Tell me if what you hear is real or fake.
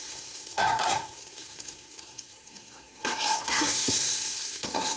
fake